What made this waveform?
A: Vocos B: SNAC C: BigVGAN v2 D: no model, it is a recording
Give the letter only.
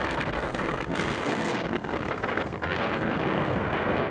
B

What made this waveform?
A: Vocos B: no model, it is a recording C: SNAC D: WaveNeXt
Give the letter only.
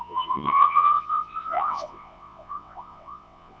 D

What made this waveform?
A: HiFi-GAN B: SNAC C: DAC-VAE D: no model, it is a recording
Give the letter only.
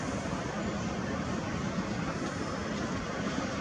D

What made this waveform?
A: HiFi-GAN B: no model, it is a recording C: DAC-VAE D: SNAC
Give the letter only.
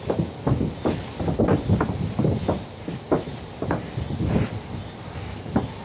B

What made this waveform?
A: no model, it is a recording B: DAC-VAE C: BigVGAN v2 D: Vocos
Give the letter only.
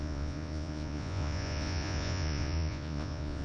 D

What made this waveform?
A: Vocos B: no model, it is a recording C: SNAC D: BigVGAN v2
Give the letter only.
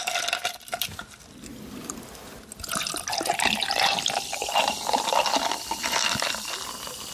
B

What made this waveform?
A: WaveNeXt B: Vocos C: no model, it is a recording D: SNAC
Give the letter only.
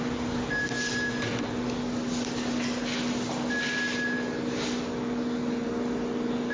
C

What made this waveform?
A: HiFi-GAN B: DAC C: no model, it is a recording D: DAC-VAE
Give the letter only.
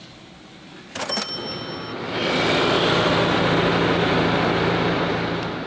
C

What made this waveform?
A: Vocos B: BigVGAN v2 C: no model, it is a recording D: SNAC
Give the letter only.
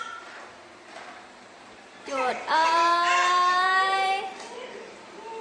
B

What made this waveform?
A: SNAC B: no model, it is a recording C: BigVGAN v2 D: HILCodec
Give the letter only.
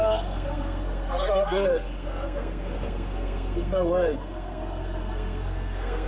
A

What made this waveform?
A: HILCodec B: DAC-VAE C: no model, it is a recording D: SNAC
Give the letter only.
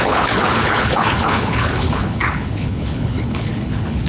A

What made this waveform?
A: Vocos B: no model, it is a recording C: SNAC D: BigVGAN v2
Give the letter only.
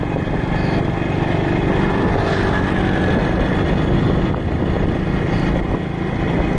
B